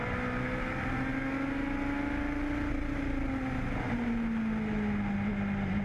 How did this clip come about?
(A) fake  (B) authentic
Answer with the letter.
B